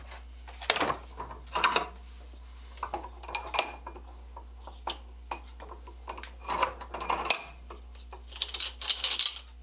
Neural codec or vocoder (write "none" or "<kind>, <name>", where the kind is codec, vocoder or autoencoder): none